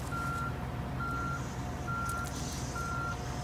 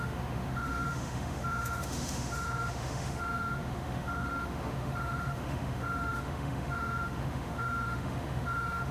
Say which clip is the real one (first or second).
first